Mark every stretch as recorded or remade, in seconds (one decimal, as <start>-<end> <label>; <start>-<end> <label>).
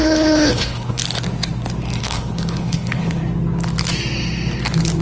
0.0-1.0 remade; 1.0-2.0 recorded; 2.0-3.2 remade; 3.2-5.0 recorded